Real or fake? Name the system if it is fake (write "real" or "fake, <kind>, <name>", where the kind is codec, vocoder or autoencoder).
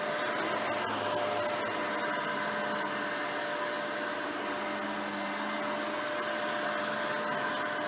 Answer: real